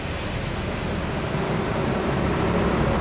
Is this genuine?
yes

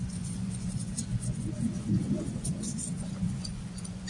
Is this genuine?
no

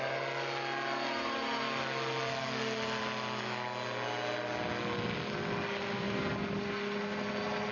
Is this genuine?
yes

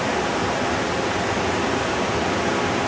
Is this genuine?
yes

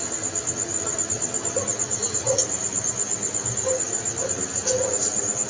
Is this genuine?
yes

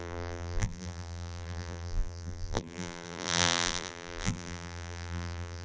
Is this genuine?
no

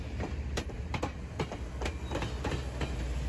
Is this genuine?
no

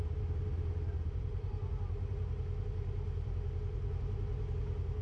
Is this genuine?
yes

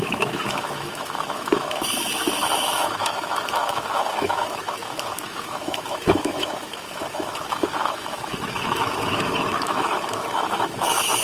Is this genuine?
no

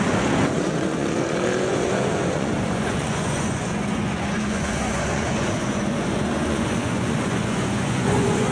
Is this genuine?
no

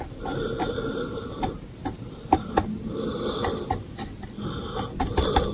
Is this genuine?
yes